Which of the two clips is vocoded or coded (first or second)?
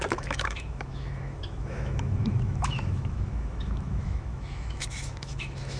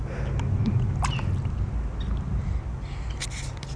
first